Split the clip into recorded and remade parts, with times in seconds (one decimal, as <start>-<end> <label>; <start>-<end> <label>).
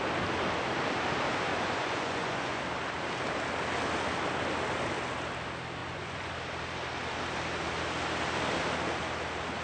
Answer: 0.0-1.5 recorded; 1.5-2.6 remade; 2.6-5.8 recorded; 5.8-6.3 remade; 6.3-9.6 recorded